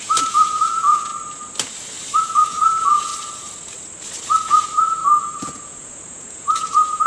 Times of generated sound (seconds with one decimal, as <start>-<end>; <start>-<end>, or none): 0.0-1.1; 2.2-3.1; 4.4-7.1